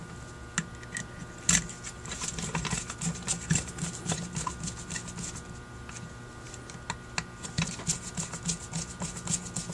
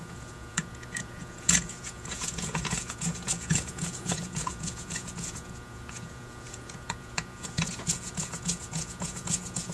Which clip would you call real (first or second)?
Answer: first